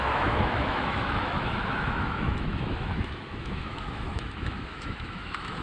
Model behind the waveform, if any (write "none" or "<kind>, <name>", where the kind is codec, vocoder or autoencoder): autoencoder, DAC-VAE